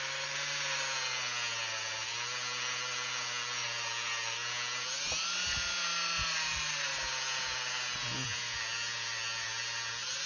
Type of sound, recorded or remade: recorded